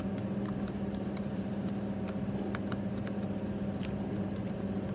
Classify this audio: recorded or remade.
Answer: remade